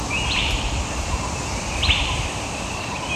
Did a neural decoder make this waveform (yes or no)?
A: yes